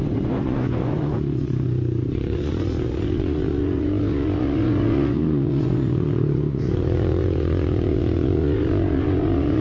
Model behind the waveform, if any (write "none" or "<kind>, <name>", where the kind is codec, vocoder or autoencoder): vocoder, Vocos